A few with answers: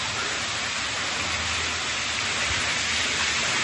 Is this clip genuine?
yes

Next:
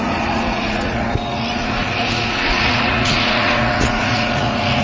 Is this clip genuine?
no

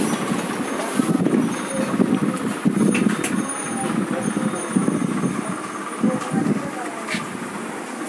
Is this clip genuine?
yes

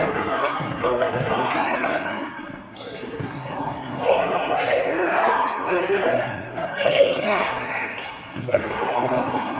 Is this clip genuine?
no